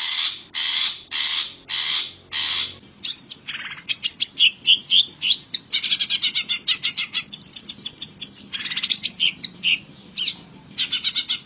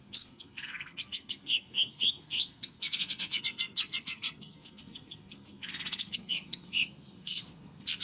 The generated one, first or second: second